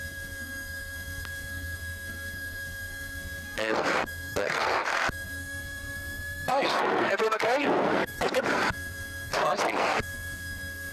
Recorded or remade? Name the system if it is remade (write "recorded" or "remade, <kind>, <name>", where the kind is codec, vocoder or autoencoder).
remade, codec, SNAC